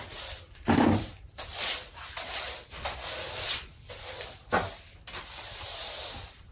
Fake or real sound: fake